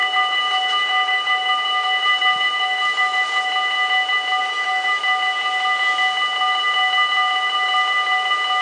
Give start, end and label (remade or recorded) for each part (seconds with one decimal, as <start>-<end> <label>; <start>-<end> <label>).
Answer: 0.0-3.5 remade; 3.5-4.4 recorded; 4.4-5.0 remade; 5.0-8.6 recorded